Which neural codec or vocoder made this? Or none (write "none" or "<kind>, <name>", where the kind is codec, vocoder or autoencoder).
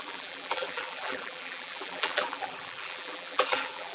vocoder, BigVGAN v2